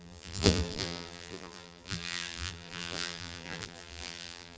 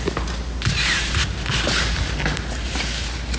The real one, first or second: second